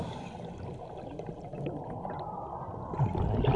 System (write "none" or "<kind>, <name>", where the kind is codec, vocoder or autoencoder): none